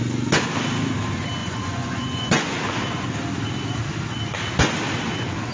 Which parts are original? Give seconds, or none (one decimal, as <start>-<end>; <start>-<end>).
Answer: 0.0-1.4; 2.6-5.5